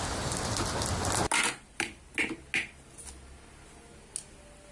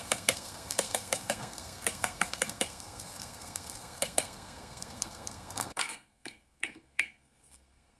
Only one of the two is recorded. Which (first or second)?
first